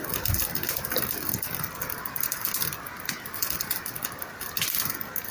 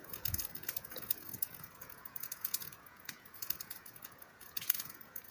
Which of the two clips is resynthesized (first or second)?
second